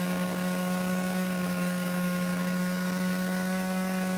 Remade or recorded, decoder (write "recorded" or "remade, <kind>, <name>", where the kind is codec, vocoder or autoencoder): remade, codec, DAC